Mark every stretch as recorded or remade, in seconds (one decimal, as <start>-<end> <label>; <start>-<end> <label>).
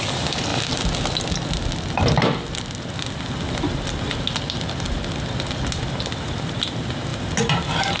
0.0-8.0 recorded